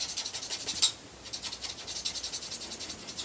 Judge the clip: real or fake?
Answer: real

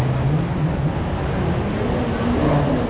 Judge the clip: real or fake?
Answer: real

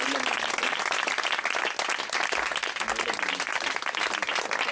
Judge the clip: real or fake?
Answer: real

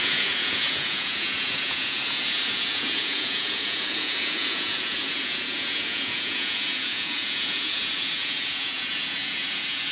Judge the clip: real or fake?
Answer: fake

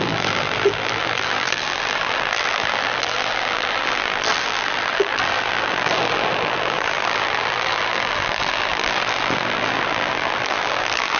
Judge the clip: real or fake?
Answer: fake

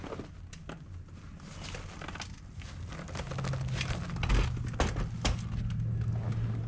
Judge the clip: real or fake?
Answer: real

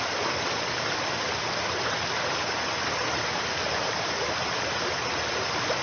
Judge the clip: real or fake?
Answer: real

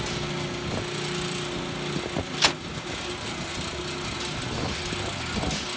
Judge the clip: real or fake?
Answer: real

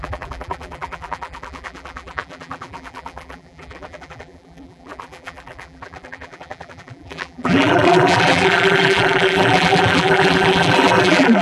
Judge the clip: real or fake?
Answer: fake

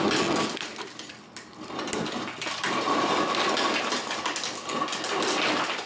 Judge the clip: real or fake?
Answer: real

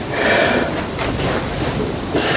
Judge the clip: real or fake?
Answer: real